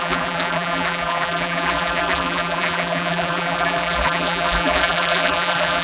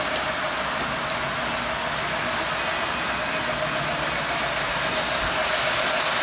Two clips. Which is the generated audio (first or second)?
first